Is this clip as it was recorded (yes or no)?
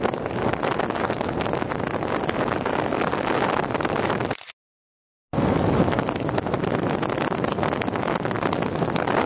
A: yes